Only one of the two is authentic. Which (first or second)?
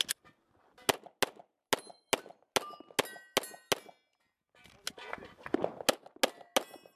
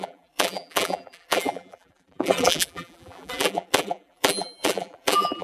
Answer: first